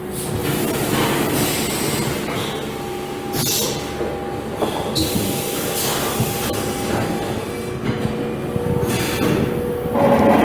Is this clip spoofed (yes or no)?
no